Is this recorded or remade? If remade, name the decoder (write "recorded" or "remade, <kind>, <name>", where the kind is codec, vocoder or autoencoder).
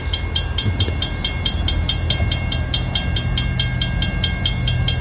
recorded